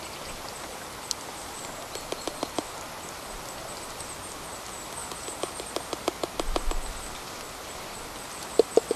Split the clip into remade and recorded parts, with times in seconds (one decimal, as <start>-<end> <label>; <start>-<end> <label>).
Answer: 0.0-9.0 recorded